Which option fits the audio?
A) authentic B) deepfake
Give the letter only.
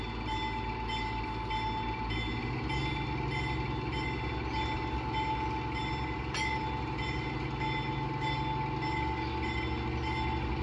A